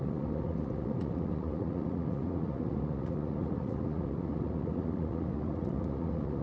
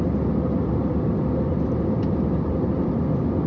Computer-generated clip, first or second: first